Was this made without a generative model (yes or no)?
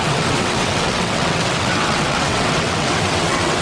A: no